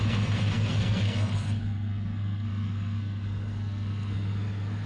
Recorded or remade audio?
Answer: remade